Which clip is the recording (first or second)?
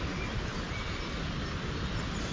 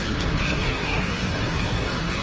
first